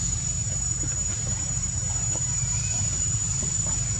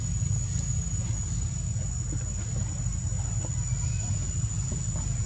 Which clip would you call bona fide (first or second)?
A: second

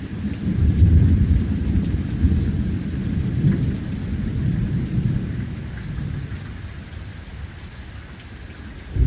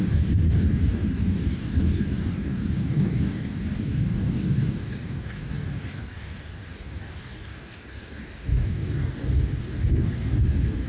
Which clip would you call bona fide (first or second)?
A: first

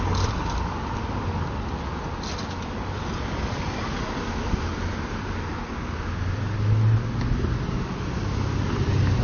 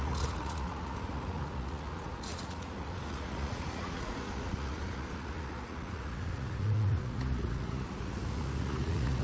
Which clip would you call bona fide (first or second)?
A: first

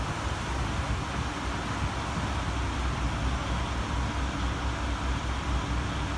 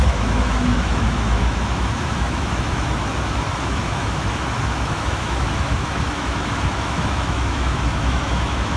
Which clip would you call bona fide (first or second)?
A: first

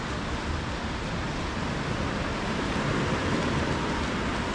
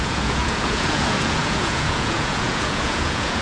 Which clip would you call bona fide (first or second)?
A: first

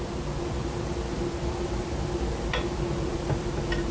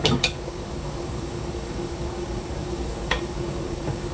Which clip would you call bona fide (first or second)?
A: first